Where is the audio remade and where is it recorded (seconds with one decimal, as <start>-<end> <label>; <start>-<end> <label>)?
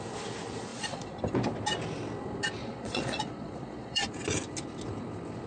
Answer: 0.0-0.7 recorded; 0.7-1.2 remade; 1.2-2.6 recorded; 2.6-4.1 remade; 4.1-5.5 recorded